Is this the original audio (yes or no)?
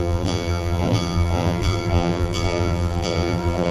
no